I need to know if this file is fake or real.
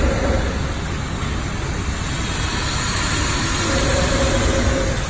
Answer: real